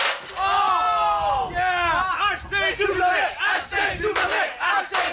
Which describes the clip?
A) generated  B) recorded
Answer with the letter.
B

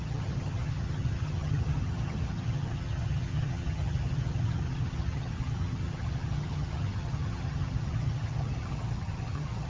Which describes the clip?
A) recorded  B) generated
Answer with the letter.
B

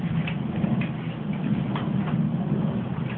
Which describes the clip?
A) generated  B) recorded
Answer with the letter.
B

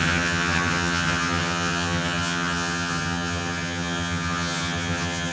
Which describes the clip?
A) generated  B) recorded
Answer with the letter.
A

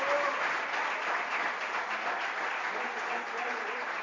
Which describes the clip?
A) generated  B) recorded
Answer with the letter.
B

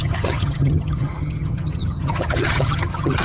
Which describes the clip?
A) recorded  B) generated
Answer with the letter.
B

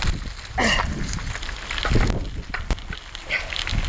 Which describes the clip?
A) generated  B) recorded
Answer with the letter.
B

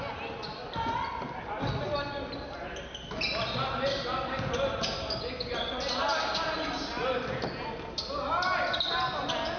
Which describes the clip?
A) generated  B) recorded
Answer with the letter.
B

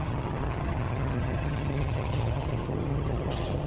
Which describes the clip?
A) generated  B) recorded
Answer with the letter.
A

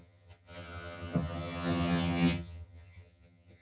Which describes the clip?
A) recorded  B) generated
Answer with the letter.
B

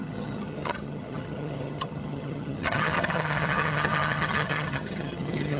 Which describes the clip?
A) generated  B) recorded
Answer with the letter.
A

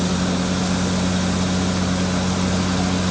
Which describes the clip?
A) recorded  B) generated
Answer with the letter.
A